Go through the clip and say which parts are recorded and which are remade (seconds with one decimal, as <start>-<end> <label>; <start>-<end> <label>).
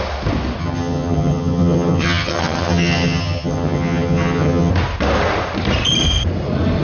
0.0-0.6 recorded; 0.6-4.7 remade; 4.7-6.8 recorded